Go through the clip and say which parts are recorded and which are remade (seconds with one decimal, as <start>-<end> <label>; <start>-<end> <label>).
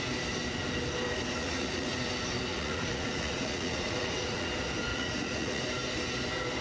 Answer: 0.0-1.4 recorded; 1.4-2.0 remade; 2.0-2.5 recorded; 2.5-4.5 remade; 4.5-4.9 recorded; 4.9-5.6 remade; 5.6-6.6 recorded